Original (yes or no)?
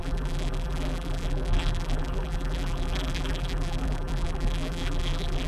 no